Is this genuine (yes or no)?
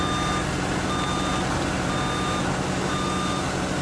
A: yes